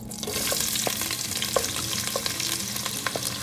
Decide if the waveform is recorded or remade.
recorded